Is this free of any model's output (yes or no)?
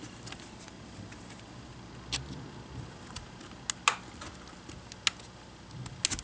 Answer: yes